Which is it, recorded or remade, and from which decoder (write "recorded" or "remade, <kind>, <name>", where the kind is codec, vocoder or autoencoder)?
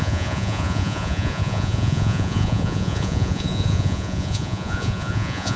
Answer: remade, vocoder, Vocos